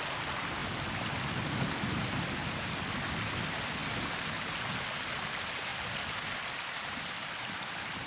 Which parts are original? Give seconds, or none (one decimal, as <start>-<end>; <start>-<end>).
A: 0.0-5.7